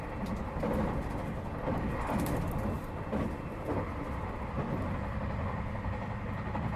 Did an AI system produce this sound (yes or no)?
no